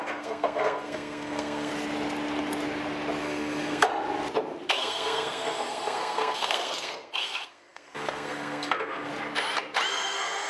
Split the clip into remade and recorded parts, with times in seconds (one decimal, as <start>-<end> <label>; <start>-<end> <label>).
0.0-1.7 remade; 1.7-3.2 recorded; 3.2-3.9 remade; 3.9-4.7 recorded; 4.7-9.1 remade; 9.1-9.9 recorded; 9.9-10.5 remade